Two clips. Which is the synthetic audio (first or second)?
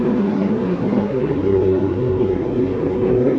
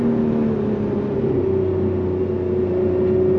first